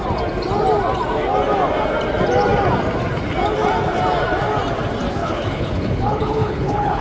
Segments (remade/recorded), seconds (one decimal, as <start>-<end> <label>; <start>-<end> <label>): 0.0-5.2 recorded; 5.2-7.0 remade

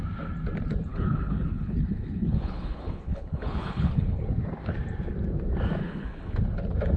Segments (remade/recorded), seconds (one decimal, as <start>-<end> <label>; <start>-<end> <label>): 0.0-0.9 recorded; 0.9-4.2 remade; 4.2-5.8 recorded; 5.8-6.4 remade; 6.4-7.0 recorded

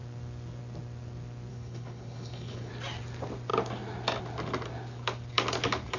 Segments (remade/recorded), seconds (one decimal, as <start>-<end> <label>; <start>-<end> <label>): 0.0-1.5 recorded; 1.5-2.7 remade; 2.7-6.0 recorded

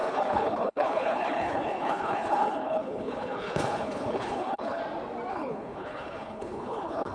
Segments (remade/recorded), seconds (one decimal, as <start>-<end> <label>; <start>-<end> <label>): 0.0-4.8 remade; 4.8-5.3 recorded; 5.3-7.1 remade

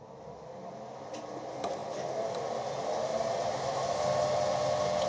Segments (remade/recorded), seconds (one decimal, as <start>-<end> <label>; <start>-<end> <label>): 0.0-5.1 recorded

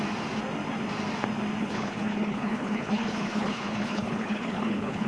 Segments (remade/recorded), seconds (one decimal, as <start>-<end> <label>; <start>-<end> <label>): 0.0-1.6 recorded; 1.6-5.1 remade

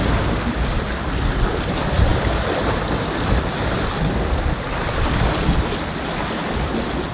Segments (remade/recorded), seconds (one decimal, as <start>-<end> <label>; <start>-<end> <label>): 0.0-7.1 recorded